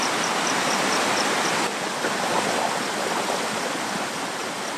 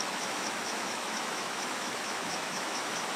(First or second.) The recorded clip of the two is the first